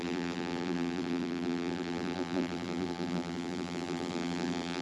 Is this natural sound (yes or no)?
no